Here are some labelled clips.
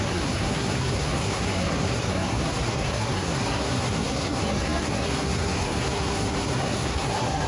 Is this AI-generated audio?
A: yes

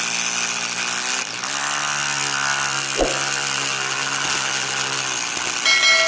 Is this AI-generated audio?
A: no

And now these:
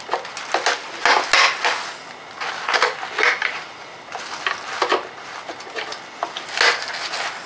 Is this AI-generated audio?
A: no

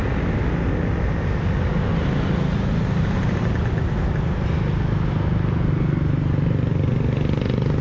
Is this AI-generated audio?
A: no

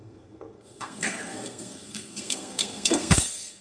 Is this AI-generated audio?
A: yes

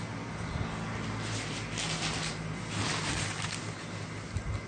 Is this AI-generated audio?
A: no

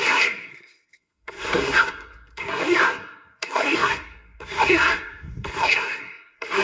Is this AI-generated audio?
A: yes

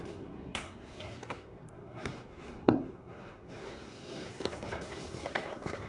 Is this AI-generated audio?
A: yes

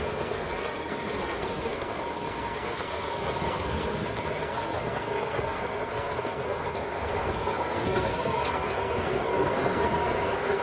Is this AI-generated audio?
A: yes